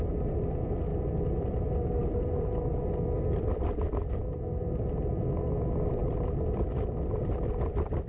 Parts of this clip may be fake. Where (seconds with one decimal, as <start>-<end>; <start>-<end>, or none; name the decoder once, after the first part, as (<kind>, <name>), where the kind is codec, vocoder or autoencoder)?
none

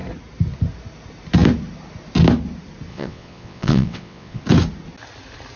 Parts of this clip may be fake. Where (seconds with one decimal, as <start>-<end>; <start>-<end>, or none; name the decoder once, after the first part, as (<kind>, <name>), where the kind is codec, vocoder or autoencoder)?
2.9-4.4 (vocoder, WaveNeXt)

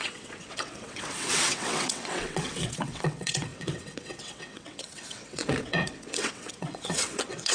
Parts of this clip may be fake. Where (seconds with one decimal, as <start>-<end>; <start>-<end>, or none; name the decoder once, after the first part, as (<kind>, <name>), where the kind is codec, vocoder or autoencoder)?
0.0-7.5 (vocoder, WaveNeXt)